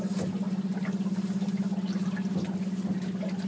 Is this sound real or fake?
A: real